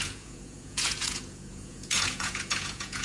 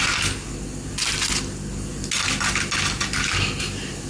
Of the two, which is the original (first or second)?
second